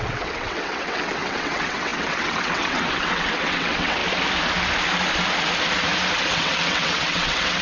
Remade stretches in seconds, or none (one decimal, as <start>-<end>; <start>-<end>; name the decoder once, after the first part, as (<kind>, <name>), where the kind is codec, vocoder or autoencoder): 0.0-4.0 (vocoder, WaveNeXt); 6.2-7.6